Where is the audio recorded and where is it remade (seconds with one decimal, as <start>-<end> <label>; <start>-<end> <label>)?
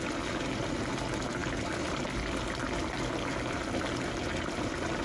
0.0-5.0 recorded